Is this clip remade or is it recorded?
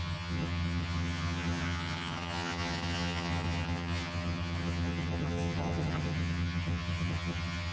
remade